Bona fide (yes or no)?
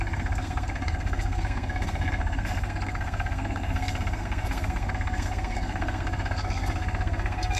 no